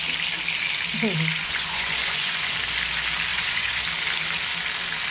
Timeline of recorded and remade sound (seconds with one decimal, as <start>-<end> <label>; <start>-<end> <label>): 0.0-1.4 recorded; 1.4-2.5 remade; 2.5-3.3 recorded; 3.3-3.8 remade; 3.8-5.1 recorded